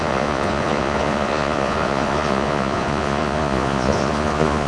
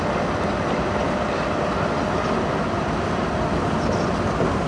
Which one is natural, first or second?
second